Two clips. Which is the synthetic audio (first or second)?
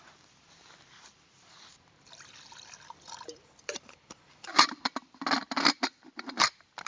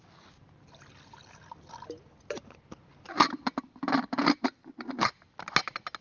first